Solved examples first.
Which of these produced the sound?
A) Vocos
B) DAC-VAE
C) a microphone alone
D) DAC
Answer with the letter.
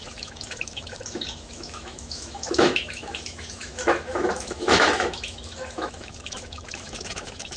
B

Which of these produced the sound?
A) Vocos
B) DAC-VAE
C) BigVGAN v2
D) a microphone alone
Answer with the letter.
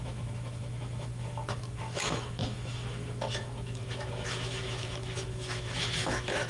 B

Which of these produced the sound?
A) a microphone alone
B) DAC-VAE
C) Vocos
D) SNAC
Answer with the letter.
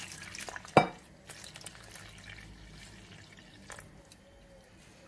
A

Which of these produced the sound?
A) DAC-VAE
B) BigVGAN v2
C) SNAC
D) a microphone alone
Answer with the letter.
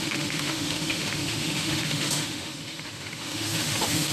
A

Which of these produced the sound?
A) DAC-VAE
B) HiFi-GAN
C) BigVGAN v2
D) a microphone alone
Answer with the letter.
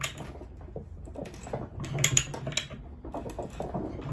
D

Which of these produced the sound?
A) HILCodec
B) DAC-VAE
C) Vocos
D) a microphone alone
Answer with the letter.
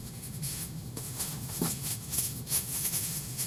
B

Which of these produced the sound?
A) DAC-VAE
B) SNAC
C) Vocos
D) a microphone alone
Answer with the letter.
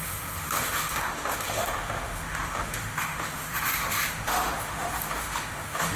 A